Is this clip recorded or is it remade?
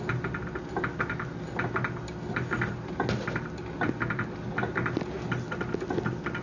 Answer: recorded